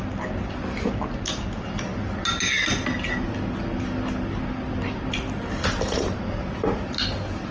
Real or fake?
real